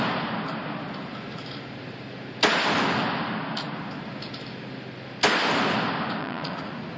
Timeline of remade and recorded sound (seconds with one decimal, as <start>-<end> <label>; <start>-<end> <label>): 0.0-6.2 recorded; 6.2-7.0 remade